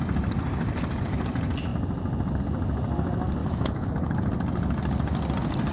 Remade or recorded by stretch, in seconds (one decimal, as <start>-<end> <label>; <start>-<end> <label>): 0.0-3.4 recorded; 3.4-3.9 remade; 3.9-5.7 recorded